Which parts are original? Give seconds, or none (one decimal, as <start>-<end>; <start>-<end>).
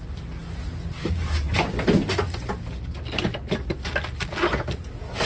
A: 0.0-5.3